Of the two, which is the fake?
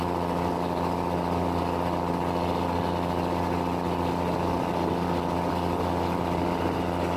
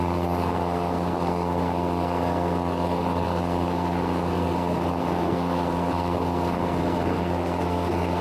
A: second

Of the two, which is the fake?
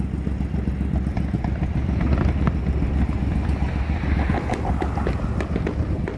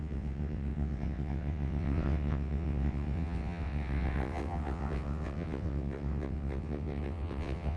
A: second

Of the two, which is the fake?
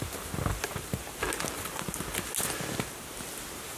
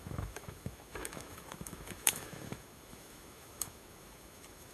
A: second